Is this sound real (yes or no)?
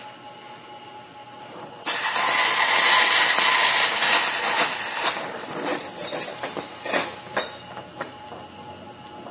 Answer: yes